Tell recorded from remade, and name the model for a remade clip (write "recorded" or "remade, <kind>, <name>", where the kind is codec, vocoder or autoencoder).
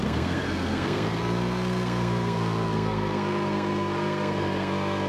remade, codec, SNAC